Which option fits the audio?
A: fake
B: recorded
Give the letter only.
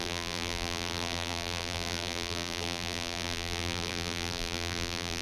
A